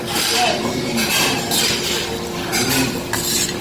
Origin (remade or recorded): recorded